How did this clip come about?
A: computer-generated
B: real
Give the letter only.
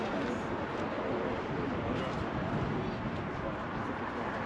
B